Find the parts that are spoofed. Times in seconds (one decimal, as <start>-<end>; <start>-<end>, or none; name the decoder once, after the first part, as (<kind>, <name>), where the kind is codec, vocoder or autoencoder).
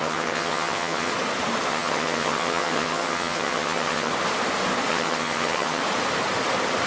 0.0-1.1 (vocoder, HiFi-GAN); 1.7-4.1; 4.9-5.8